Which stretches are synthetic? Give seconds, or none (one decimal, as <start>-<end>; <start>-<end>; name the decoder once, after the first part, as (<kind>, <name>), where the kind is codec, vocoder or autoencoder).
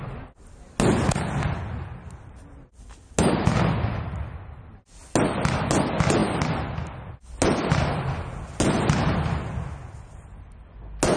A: none